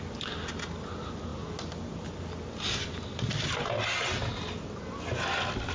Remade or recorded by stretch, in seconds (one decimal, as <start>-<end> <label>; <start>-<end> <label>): 0.0-5.7 recorded